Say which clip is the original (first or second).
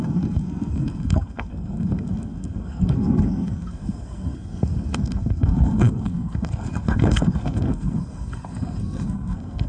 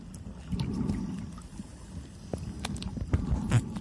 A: second